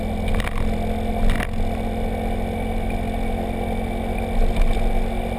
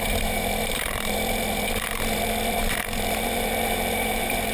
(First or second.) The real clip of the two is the first